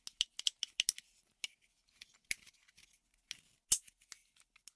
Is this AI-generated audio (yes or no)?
no